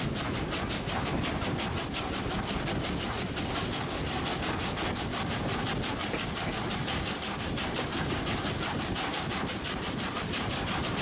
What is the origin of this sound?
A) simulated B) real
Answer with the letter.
B